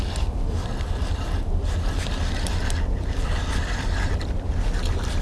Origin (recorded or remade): recorded